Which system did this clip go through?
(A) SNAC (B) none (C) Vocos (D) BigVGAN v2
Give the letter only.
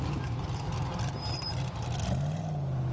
B